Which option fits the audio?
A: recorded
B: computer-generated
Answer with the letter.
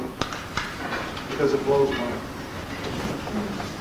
B